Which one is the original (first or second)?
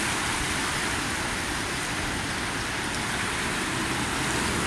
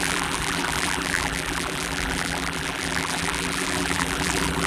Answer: first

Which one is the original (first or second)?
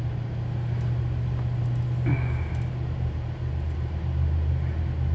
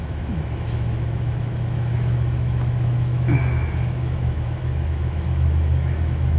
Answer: first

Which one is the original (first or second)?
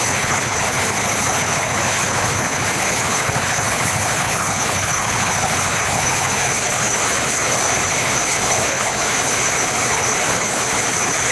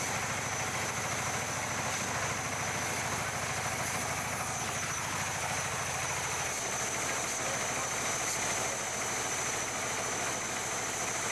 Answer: second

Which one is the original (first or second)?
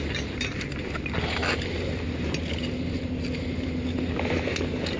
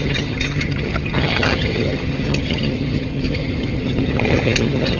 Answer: first